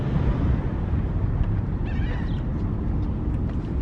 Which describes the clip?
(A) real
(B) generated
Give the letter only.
A